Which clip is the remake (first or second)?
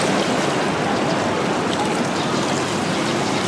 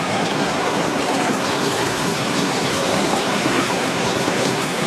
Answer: second